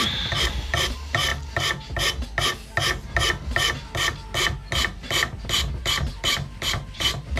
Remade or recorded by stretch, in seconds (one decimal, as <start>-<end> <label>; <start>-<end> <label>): 0.0-1.3 remade; 1.3-5.7 recorded; 5.7-7.4 remade